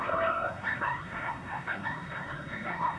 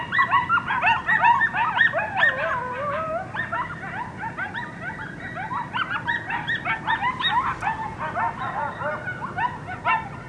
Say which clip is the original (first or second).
second